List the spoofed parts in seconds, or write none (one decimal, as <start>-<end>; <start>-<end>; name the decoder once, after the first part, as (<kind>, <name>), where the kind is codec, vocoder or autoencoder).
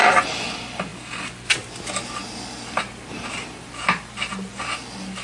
0.0-0.9 (vocoder, BigVGAN v2); 4.0-5.2